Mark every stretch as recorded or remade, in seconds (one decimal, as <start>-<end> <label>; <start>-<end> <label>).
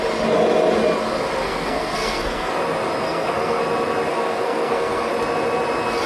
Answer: 0.0-1.4 recorded; 1.4-2.5 remade; 2.5-3.0 recorded; 3.0-3.6 remade; 3.6-4.1 recorded; 4.1-5.1 remade; 5.1-6.1 recorded